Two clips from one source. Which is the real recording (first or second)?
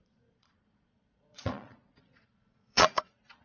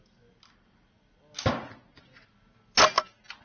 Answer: second